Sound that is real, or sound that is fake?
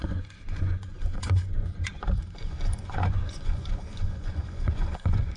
fake